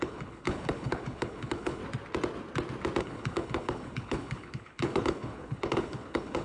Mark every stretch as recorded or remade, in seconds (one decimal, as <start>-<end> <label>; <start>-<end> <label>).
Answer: 0.0-1.8 remade; 1.8-3.0 recorded; 3.0-6.4 remade